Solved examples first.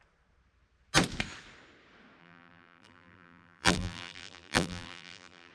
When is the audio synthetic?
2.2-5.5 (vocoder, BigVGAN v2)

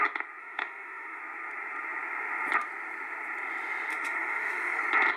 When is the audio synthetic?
0.4-1.2 (autoencoder, DAC-VAE); 3.9-4.8

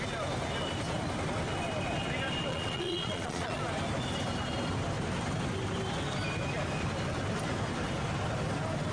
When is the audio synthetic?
2.5-3.6 (vocoder, Vocos)

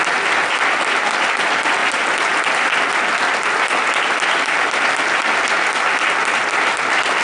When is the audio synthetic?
none

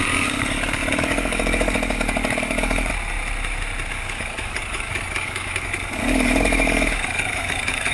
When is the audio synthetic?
0.0-2.9 (codec, DAC); 3.9-7.9

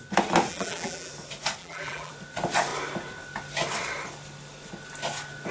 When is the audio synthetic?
0.5-1.1 (vocoder, BigVGAN v2); 1.6-2.1